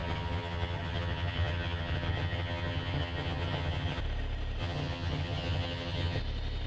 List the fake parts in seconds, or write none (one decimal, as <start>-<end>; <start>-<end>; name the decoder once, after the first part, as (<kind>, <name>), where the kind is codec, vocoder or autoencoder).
0.0-4.0 (vocoder, HiFi-GAN); 4.6-6.2